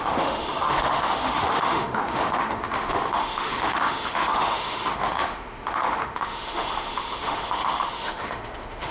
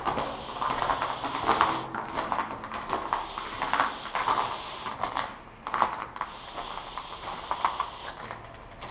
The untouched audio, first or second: second